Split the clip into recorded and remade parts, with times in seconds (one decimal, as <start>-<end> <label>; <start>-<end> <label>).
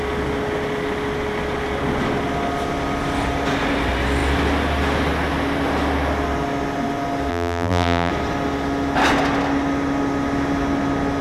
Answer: 0.0-7.3 recorded; 7.3-8.1 remade; 8.1-11.2 recorded